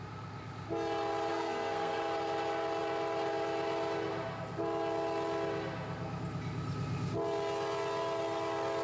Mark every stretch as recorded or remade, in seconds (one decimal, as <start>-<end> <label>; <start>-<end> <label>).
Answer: 0.0-1.3 recorded; 1.3-2.0 remade; 2.0-8.8 recorded